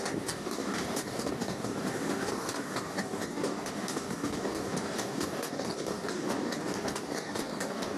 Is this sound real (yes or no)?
no